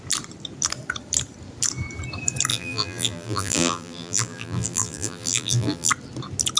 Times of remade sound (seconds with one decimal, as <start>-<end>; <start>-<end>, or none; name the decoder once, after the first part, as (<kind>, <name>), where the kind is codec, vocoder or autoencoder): 2.5-5.9 (vocoder, BigVGAN v2)